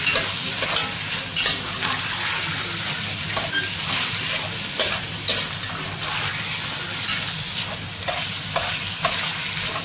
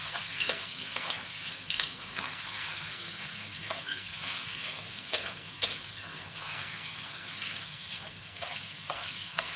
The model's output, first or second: second